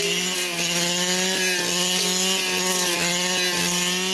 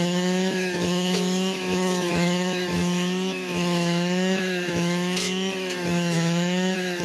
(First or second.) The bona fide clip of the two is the first